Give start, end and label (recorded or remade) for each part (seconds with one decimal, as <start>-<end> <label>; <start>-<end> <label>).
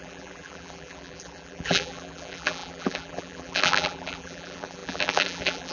0.0-5.7 remade